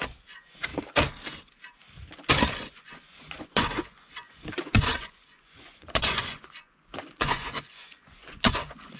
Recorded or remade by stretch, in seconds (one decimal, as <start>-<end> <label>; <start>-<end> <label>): 0.0-0.7 remade; 0.7-2.5 recorded; 2.5-9.0 remade